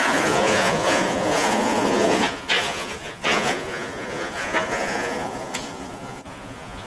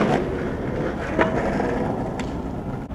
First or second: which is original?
second